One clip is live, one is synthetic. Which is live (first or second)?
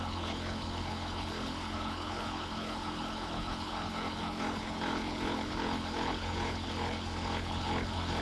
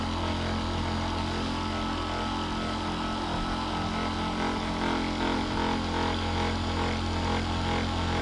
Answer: second